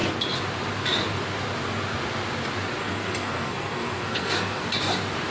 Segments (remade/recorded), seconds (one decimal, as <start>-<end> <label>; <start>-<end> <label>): 0.0-2.8 recorded; 2.8-4.7 remade; 4.7-5.3 recorded